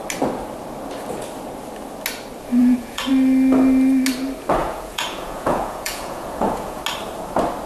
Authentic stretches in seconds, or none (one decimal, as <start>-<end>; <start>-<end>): 0.0-2.6; 3.1-4.6; 6.8-7.7